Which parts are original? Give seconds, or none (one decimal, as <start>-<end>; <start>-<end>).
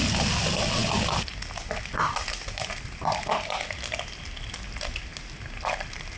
0.0-6.2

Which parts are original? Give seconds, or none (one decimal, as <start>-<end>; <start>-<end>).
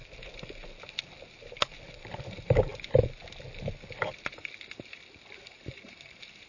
0.0-1.9; 2.7-5.4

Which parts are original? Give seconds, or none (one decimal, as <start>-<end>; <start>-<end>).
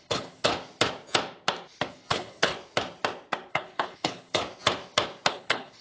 0.5-1.9; 2.5-3.5; 4.4-5.3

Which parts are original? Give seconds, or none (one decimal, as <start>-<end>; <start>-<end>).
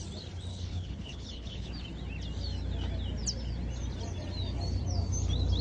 0.0-0.5; 1.7-5.6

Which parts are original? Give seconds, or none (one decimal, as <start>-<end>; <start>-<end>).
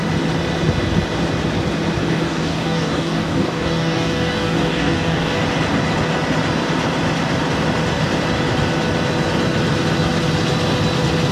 0.0-2.0; 5.4-11.3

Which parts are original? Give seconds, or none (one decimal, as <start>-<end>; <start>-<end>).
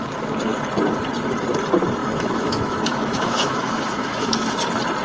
0.0-2.0; 4.5-5.0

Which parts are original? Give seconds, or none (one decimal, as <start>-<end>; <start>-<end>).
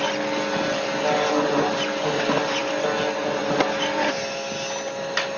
0.0-5.4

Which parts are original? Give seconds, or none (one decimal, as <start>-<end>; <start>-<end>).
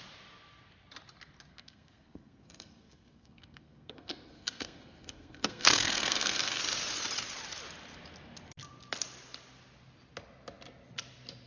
0.0-1.5; 6.6-11.5